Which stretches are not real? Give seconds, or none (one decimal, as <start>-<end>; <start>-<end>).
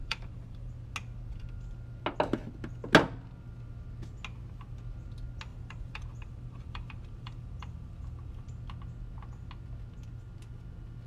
0.0-0.7; 5.5-8.5